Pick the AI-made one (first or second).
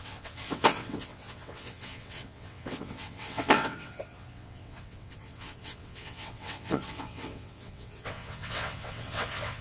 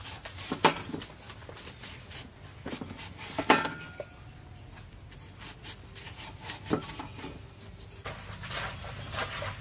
first